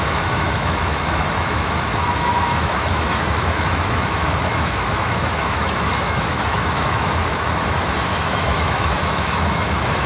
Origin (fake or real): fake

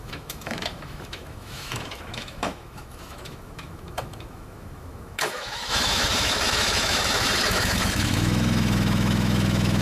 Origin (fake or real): fake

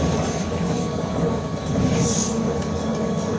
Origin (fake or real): fake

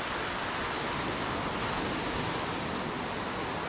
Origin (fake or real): real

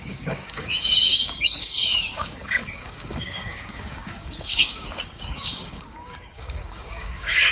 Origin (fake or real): fake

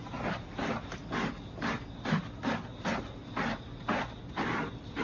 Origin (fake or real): real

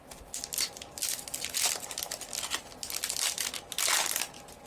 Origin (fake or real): real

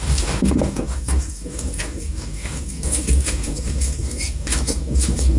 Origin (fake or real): fake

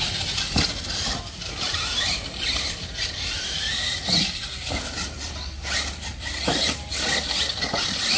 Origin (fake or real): fake